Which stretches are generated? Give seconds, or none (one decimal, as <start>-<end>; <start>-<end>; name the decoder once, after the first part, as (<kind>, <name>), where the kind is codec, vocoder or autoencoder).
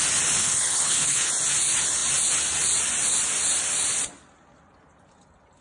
0.4-1.3 (codec, HILCodec)